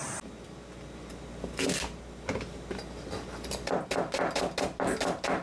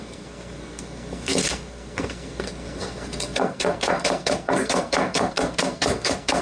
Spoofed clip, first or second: second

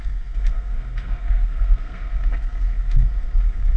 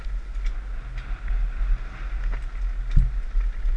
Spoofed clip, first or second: first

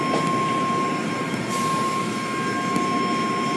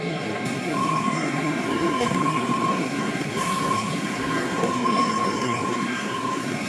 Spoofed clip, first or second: second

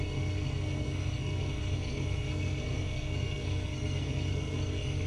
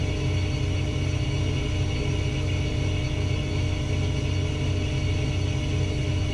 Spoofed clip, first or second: first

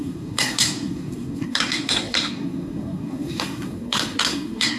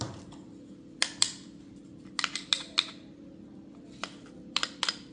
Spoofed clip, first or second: first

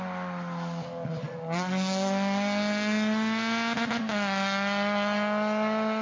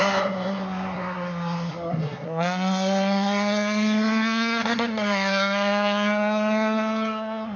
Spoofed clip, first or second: second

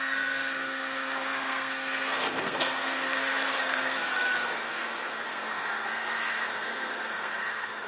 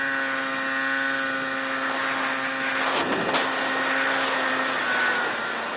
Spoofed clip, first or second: first